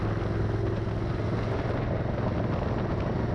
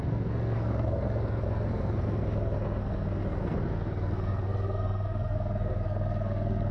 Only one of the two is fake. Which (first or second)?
second